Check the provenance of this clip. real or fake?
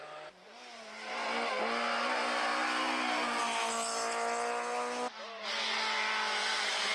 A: real